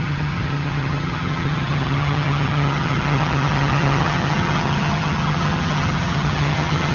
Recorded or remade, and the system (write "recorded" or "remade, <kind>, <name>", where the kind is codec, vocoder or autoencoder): remade, vocoder, HiFi-GAN